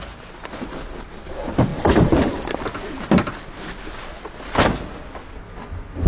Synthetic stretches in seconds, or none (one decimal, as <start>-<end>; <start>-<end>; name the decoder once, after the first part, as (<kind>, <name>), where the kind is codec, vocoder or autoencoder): none